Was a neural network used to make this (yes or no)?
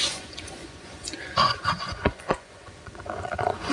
yes